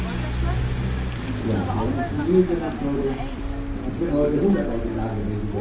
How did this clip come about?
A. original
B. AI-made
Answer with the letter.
A